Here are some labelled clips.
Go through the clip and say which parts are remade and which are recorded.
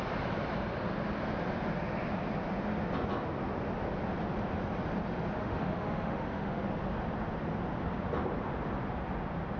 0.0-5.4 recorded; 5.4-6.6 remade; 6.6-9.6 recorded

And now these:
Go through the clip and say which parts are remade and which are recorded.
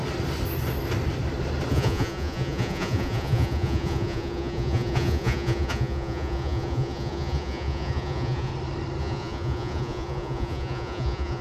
0.0-1.7 recorded; 1.7-8.5 remade; 8.5-9.0 recorded; 9.0-11.4 remade